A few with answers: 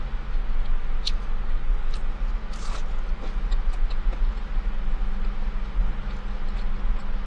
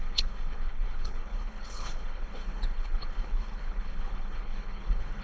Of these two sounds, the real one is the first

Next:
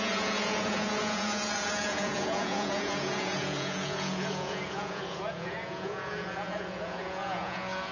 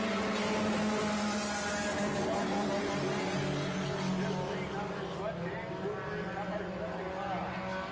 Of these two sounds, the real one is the second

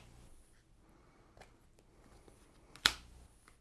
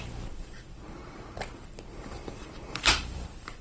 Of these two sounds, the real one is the first